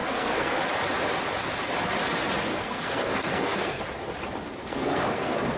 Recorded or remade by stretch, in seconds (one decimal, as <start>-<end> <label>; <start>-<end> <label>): 0.0-0.6 remade; 0.6-2.5 recorded; 2.5-3.8 remade; 3.8-4.6 recorded; 4.6-5.6 remade